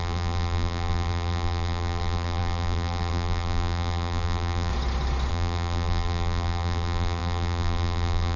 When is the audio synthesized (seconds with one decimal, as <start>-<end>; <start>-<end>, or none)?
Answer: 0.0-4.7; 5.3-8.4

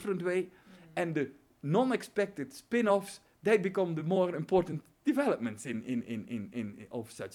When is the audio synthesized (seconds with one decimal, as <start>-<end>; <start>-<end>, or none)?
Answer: 4.0-6.0

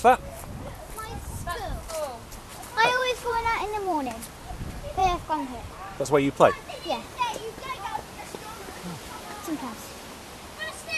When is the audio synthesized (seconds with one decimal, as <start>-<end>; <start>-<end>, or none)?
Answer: 2.5-3.3; 3.7-4.5